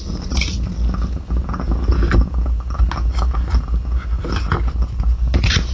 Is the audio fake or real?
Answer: real